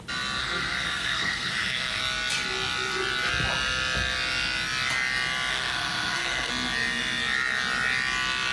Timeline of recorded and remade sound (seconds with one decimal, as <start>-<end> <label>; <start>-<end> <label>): 0.0-0.4 recorded; 0.4-2.0 remade; 2.0-5.5 recorded; 5.5-6.5 remade; 6.5-8.5 recorded